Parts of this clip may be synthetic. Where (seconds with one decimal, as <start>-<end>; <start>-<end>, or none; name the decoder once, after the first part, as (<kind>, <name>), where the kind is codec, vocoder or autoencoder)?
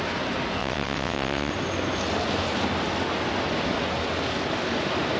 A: 0.6-1.5 (vocoder, WaveNeXt)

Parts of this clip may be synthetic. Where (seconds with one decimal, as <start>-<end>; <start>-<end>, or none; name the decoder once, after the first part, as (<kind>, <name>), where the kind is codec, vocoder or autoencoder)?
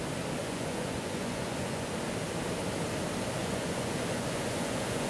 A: 0.4-1.9 (vocoder, Vocos); 3.4-5.1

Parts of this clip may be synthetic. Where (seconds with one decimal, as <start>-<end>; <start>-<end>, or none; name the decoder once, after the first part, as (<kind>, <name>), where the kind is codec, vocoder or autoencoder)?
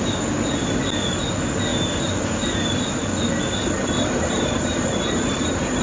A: none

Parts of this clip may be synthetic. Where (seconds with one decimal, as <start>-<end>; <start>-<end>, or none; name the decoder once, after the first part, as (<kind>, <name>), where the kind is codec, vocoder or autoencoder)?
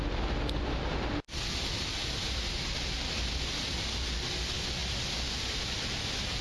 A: none